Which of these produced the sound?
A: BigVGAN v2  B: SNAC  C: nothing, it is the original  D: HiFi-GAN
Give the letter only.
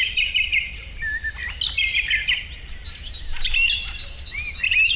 C